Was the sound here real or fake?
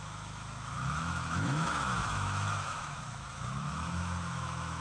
fake